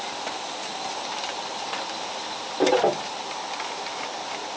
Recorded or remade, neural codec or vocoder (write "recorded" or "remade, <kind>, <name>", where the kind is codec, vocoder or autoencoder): recorded